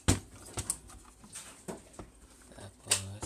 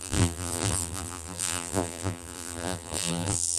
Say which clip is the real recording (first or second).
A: first